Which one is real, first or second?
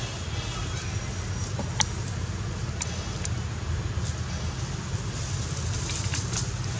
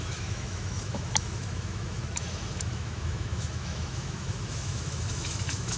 first